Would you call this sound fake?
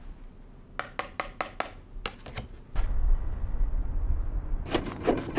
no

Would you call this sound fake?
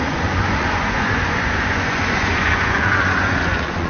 yes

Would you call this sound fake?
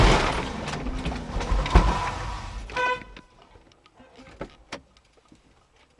no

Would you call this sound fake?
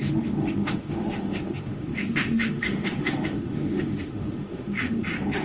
yes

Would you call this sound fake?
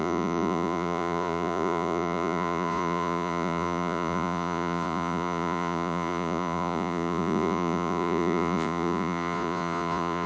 yes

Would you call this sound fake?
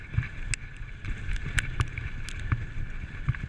no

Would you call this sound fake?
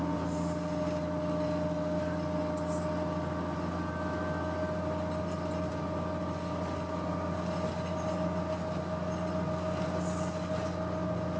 no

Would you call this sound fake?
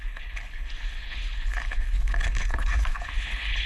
yes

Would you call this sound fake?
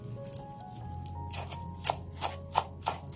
no